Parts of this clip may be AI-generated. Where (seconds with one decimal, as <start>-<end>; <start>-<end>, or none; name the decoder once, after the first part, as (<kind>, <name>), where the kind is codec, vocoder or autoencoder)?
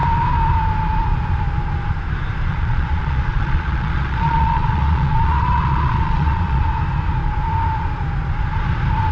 2.5-6.6 (vocoder, Vocos)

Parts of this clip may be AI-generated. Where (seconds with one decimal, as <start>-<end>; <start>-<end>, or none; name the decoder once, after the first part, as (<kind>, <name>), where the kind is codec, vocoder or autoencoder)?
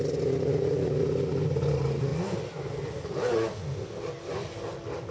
none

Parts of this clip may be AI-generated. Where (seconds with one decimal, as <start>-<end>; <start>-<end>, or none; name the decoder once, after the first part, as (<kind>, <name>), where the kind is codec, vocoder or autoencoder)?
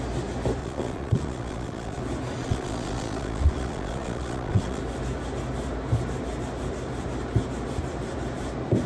0.6-2.0 (vocoder, Vocos); 2.4-4.8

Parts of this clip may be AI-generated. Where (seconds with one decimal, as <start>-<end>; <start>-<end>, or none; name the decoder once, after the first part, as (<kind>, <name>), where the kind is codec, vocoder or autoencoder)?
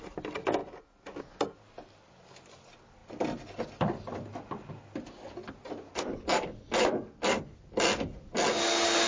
none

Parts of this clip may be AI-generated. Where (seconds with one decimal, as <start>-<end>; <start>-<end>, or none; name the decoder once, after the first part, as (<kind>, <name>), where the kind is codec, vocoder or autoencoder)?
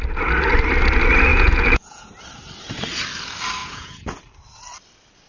1.3-2.1 (vocoder, Vocos); 3.6-4.2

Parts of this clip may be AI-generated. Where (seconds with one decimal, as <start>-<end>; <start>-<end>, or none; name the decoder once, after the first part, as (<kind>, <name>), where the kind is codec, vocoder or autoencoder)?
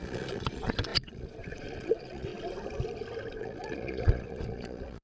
0.0-2.3 (vocoder, Vocos); 3.4-5.0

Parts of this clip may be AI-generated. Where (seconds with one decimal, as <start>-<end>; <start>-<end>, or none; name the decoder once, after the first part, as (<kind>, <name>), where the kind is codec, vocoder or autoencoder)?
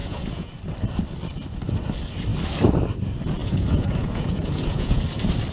0.0-0.5 (vocoder, Vocos); 3.4-5.0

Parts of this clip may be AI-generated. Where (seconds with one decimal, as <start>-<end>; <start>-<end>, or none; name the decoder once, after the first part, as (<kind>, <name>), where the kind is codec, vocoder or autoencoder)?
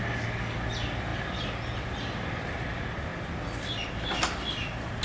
none